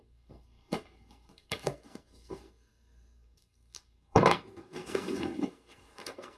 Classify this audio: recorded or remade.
remade